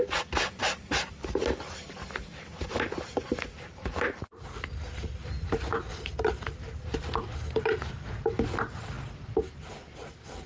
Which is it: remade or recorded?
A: recorded